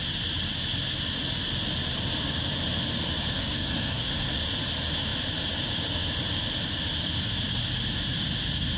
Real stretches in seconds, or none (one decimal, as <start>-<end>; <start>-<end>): 0.0-3.3; 4.4-8.8